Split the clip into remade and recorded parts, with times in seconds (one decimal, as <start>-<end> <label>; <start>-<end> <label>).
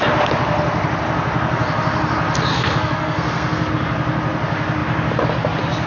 0.0-2.5 recorded; 2.5-3.7 remade; 3.7-5.9 recorded